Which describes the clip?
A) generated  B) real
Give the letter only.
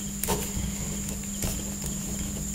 B